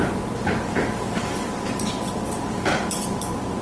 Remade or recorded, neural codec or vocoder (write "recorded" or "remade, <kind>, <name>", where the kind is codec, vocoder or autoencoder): remade, vocoder, BigVGAN v2